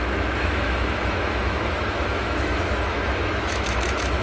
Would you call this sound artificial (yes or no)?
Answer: yes